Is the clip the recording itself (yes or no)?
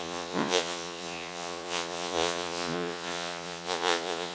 no